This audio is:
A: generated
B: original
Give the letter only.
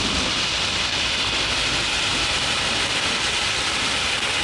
B